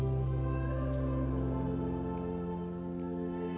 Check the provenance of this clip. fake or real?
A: real